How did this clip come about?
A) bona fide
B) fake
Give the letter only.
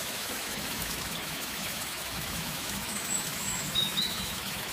B